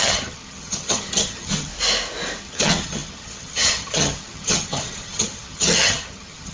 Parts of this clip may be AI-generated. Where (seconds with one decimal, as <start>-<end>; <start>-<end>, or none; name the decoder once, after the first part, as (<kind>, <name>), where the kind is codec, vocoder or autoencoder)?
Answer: 0.0-1.7 (vocoder, HiFi-GAN); 2.4-6.5